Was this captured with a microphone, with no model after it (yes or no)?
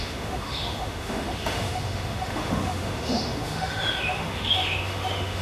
no